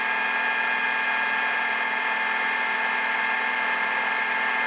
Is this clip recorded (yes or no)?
yes